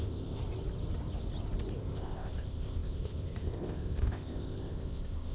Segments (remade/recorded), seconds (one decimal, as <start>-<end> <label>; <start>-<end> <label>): 0.0-0.4 remade; 0.4-1.8 recorded; 1.8-5.3 remade